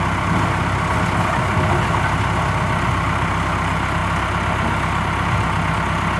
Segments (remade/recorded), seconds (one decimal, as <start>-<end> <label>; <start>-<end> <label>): 0.0-6.2 recorded